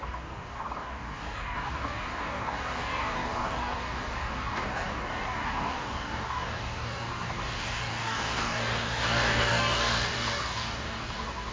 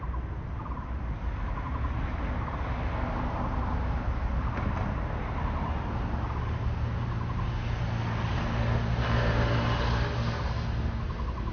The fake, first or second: first